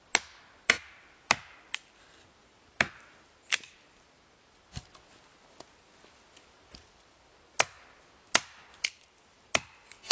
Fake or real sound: real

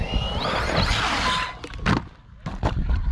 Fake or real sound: real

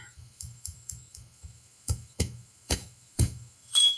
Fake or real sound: fake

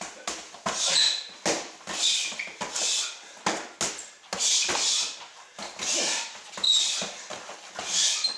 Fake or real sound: real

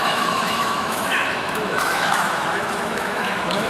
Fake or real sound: fake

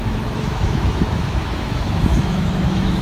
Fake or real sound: fake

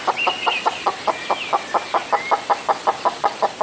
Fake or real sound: real